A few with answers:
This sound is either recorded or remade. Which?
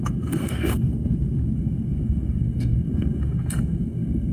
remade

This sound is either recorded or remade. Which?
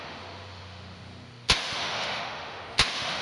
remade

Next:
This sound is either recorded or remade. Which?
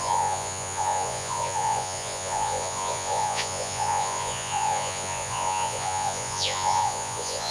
remade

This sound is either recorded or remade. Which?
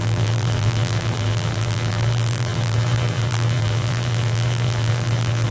remade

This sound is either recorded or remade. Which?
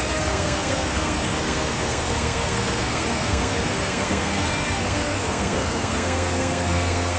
remade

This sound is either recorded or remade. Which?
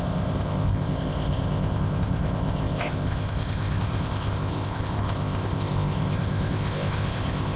remade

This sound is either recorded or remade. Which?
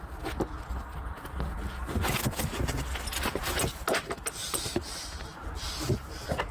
recorded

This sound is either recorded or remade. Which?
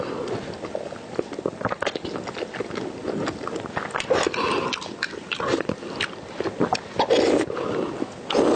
recorded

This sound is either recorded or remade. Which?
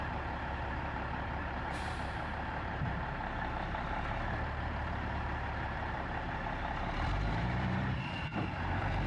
remade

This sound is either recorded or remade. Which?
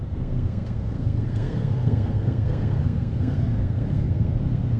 remade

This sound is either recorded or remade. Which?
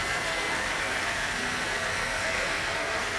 remade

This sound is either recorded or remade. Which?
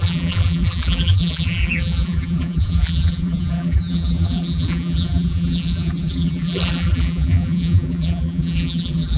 remade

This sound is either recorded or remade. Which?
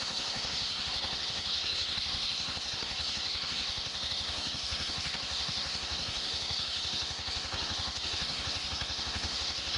remade